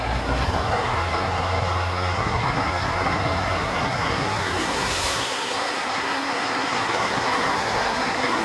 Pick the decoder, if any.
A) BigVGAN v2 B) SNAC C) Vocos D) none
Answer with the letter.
B